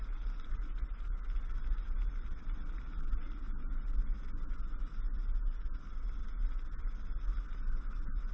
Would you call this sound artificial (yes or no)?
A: no